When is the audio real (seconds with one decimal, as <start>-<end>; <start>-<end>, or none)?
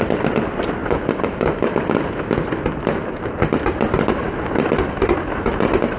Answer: 0.0-6.0